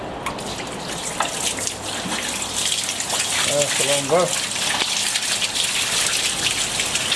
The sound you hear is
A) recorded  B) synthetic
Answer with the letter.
A